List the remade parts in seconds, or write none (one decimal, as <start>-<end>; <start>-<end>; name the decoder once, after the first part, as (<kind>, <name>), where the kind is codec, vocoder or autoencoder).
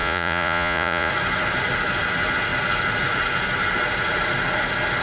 0.0-1.1 (vocoder, Vocos)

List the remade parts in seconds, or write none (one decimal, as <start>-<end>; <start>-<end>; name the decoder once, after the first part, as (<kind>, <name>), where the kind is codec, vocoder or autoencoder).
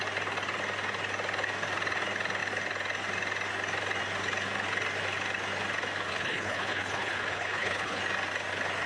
6.1-8.0 (codec, HILCodec)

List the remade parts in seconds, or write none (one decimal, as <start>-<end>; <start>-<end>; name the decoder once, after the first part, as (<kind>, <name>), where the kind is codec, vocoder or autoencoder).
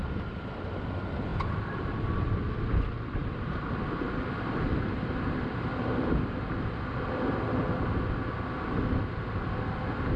1.3-2.5 (vocoder, BigVGAN v2)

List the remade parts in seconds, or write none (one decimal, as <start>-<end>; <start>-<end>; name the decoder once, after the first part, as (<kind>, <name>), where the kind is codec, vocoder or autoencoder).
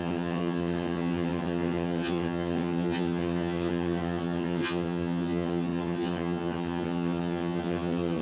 0.0-8.2 (vocoder, HiFi-GAN)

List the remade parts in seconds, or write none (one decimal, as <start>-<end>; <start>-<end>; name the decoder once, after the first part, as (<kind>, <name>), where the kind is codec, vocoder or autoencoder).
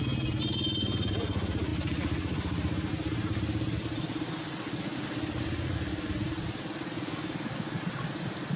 none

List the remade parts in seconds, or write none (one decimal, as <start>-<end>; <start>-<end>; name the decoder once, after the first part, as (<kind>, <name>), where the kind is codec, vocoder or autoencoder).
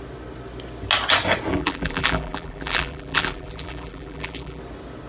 1.5-4.6 (vocoder, BigVGAN v2)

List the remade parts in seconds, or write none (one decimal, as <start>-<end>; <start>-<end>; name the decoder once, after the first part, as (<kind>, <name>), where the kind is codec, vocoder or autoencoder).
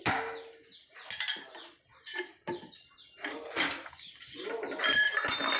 none